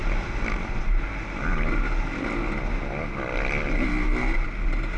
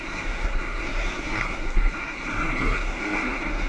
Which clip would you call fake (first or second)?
second